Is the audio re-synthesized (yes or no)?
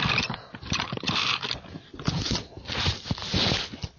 no